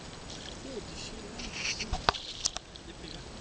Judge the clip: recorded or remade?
recorded